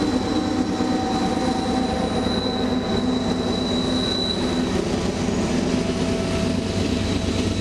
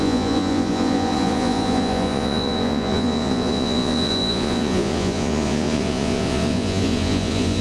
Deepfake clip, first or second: second